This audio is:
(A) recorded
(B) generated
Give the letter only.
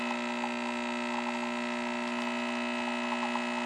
A